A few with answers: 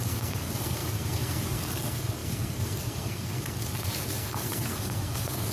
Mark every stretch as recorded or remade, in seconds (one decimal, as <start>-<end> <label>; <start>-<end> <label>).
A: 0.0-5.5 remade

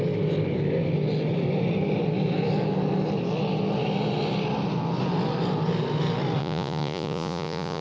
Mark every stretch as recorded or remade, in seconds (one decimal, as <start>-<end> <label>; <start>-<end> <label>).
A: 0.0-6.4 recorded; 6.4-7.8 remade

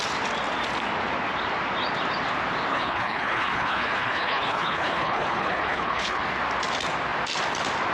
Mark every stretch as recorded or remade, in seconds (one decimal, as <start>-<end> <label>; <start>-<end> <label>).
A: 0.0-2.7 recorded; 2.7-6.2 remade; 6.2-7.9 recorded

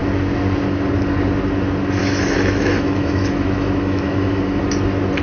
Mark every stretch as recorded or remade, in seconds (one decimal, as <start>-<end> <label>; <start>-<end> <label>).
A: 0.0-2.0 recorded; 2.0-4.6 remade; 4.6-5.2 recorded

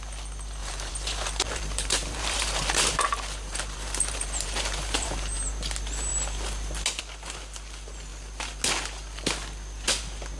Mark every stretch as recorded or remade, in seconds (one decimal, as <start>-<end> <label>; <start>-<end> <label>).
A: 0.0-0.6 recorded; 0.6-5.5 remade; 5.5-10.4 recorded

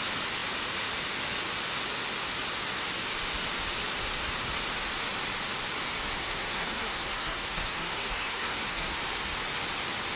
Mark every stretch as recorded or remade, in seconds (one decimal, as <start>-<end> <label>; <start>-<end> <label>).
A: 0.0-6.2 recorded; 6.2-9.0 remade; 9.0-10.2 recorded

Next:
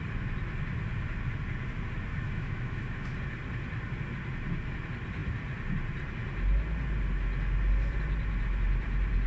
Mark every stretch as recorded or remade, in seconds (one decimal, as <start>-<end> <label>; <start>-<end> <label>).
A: 0.0-2.1 recorded; 2.1-3.2 remade; 3.2-9.3 recorded